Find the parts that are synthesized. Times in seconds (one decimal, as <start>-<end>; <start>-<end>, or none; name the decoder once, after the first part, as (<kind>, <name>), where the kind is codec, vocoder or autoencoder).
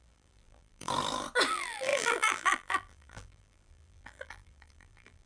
0.0-0.9 (vocoder, BigVGAN v2); 1.5-5.3